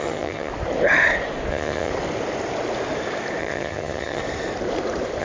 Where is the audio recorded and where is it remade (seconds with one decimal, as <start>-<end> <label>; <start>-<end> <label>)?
0.0-0.5 remade; 0.5-1.5 recorded; 1.5-1.9 remade; 1.9-3.4 recorded; 3.4-4.2 remade; 4.2-5.2 recorded